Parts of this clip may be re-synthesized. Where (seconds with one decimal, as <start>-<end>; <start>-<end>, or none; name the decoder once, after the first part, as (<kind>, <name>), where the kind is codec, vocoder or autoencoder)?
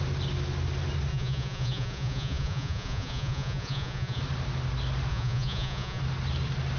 1.1-4.2 (vocoder, Vocos); 5.1-6.0